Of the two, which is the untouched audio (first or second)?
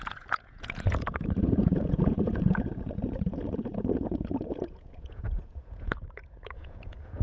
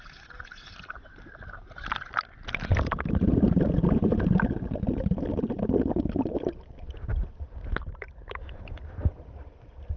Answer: second